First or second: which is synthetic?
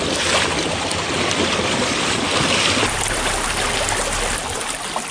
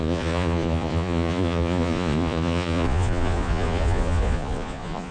second